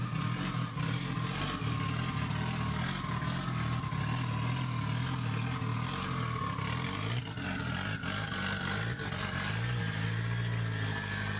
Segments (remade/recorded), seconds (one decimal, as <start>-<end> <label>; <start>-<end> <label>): 0.0-11.4 recorded